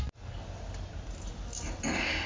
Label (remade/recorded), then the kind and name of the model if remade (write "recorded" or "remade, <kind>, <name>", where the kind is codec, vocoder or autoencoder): recorded